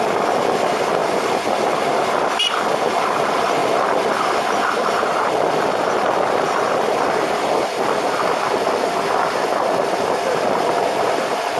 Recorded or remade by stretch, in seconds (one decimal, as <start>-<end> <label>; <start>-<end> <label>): 0.0-3.6 remade; 3.6-6.3 recorded; 6.3-11.6 remade